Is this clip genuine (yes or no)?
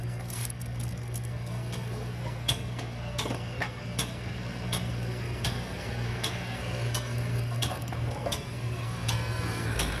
no